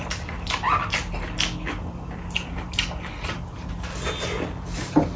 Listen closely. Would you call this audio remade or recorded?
recorded